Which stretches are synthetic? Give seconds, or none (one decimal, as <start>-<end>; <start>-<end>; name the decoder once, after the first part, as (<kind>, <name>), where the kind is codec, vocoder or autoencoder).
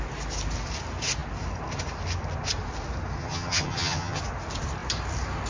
3.2-4.2 (vocoder, HiFi-GAN)